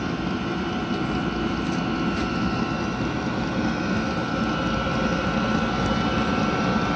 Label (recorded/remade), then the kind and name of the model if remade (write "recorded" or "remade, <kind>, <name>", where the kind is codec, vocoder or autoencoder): recorded